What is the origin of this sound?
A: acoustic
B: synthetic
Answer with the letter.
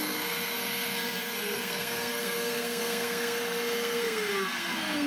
B